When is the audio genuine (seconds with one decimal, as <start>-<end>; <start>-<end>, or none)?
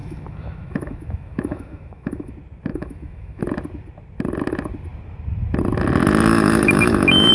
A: 2.3-2.7; 3.4-6.3